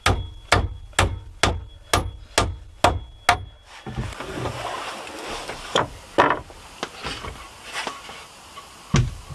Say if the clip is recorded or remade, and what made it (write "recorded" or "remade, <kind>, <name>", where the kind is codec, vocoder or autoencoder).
recorded